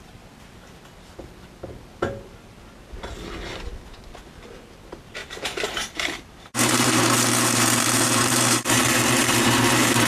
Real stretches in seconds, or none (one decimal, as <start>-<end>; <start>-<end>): 0.0-5.2